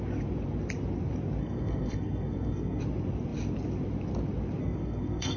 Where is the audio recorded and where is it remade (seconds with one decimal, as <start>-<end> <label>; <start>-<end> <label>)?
0.0-1.4 recorded; 1.4-2.8 remade; 2.8-4.6 recorded; 4.6-5.4 remade